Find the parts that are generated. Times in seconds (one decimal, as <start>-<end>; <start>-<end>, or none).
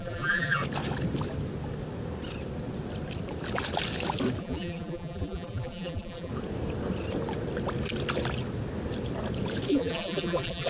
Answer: 0.0-0.6; 4.4-6.3; 9.7-10.7